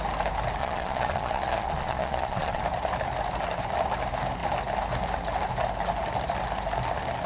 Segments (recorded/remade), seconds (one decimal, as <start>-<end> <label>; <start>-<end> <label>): 0.0-0.6 recorded; 0.6-2.6 remade; 2.6-7.3 recorded